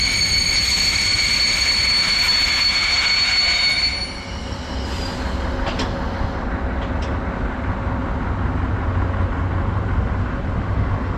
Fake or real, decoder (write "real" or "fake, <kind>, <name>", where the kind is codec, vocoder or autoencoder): real